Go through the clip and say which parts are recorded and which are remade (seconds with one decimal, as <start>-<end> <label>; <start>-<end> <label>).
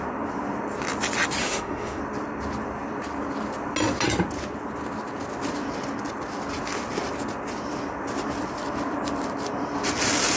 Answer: 0.0-1.4 recorded; 1.4-2.0 remade; 2.0-10.4 recorded